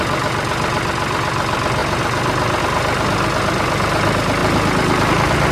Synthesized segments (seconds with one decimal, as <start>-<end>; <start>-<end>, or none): 1.8-2.6